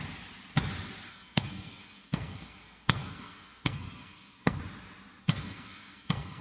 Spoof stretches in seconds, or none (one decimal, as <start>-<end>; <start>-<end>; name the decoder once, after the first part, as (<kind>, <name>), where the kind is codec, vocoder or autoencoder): 1.1-4.6 (codec, SNAC); 5.2-6.4